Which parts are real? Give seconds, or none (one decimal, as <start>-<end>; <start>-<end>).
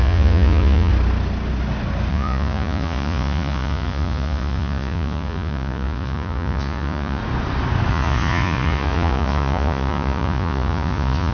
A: 0.9-2.1; 7.2-7.9